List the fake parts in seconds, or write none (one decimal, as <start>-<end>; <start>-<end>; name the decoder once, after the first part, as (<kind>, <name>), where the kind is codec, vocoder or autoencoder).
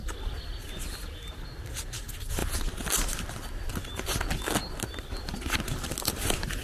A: none